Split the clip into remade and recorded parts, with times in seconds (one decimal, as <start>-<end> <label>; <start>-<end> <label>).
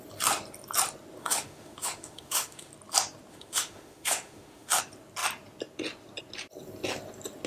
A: 0.0-1.2 recorded; 1.2-2.7 remade; 2.7-3.3 recorded; 3.3-4.8 remade; 4.8-7.5 recorded